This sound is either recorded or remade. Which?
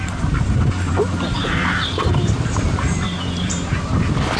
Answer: remade